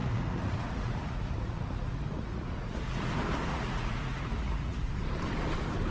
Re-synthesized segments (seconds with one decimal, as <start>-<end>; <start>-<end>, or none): 0.0-3.1; 3.5-4.9